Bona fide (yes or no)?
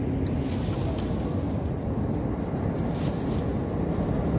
yes